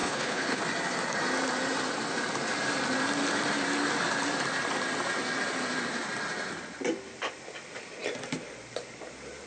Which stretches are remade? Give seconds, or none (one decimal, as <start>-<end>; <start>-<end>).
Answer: 0.0-0.6